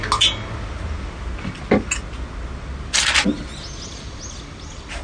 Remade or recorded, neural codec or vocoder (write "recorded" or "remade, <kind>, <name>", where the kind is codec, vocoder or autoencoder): recorded